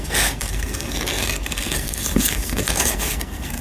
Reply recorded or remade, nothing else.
remade